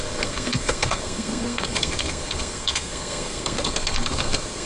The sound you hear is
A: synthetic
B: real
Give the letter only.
A